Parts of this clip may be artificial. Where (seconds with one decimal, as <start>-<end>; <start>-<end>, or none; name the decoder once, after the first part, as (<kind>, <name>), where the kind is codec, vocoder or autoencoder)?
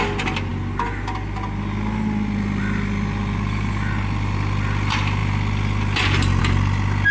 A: none